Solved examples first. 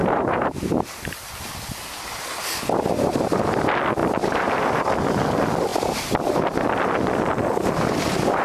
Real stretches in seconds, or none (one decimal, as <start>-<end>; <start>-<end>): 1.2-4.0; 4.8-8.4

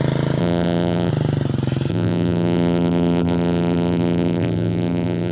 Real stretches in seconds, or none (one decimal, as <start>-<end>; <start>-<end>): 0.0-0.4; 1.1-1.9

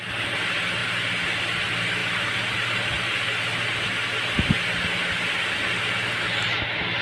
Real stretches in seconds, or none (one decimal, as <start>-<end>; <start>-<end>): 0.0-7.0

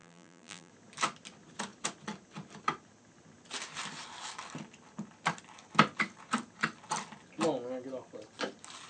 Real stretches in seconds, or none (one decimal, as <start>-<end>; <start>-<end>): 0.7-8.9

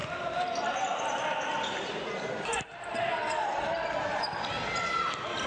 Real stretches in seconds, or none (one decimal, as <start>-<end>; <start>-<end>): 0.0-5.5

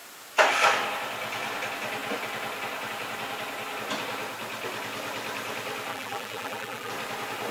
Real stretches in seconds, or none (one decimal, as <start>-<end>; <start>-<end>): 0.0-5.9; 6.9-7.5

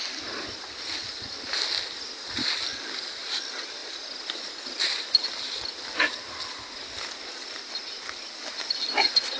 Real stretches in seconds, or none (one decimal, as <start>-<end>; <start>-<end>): 0.0-2.7; 3.2-9.4